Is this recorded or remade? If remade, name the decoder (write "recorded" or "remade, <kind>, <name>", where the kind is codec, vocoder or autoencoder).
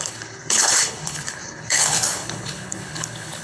remade, codec, HILCodec